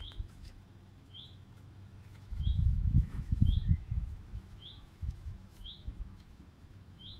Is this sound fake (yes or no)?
yes